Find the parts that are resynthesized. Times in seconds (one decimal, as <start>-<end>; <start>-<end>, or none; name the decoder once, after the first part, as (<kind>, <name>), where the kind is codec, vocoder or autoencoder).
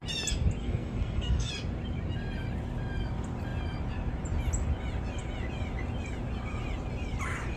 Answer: 0.6-1.5 (codec, SNAC)